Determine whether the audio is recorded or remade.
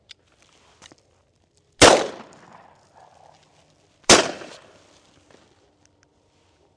recorded